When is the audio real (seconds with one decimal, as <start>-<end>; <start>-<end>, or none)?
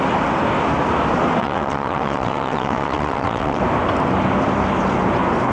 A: 0.0-1.4; 3.6-5.5